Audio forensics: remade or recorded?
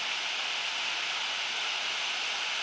recorded